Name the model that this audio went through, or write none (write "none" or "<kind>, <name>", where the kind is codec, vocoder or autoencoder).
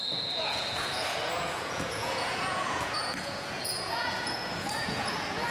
vocoder, Vocos